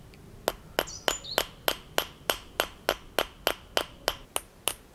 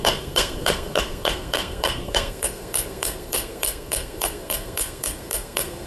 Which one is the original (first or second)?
first